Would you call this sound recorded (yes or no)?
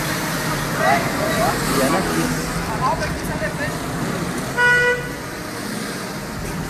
yes